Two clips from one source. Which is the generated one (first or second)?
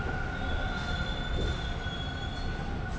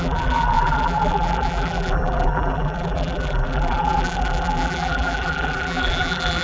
second